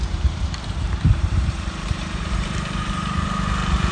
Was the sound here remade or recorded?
remade